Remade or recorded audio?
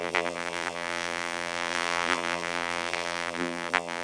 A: remade